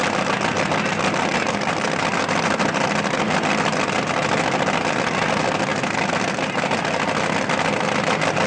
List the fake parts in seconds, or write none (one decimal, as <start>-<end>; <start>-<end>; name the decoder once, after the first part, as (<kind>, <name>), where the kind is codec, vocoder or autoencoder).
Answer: none